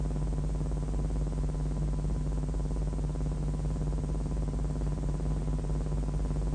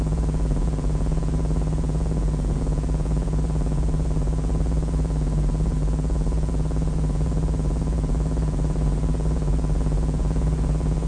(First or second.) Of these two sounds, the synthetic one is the second